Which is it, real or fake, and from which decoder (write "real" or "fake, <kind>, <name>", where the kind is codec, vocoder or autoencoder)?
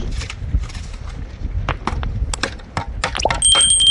real